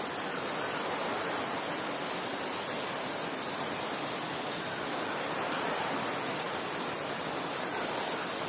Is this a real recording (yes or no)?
yes